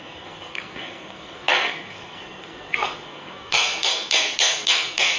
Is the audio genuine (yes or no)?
no